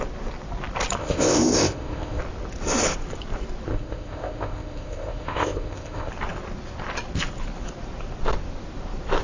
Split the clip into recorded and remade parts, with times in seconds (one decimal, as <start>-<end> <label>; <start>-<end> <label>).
0.0-1.0 recorded; 1.0-2.2 remade; 2.2-3.7 recorded; 3.7-6.1 remade; 6.1-9.2 recorded